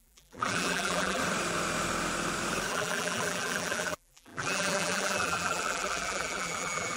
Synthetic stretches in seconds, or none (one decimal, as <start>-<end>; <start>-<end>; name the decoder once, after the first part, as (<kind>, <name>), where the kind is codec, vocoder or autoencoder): 0.0-1.2 (vocoder, BigVGAN v2); 2.7-7.0